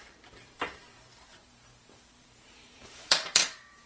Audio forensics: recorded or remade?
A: remade